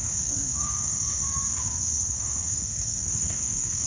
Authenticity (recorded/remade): remade